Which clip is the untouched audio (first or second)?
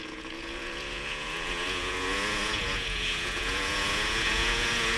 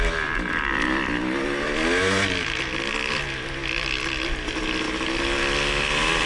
second